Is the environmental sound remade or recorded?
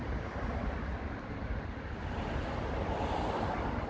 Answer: recorded